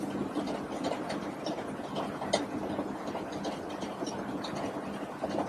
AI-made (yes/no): no